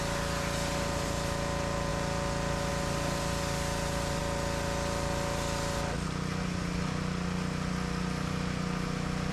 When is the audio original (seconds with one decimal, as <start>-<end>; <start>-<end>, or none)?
0.0-9.3